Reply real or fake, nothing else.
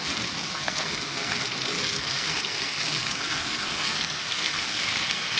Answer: fake